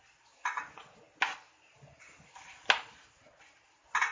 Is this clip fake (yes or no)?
no